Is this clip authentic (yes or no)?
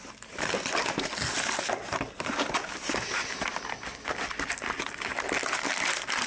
yes